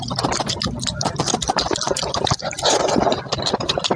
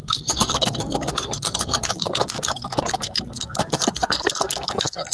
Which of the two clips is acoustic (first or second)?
first